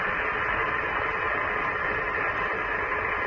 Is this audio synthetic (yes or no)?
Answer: no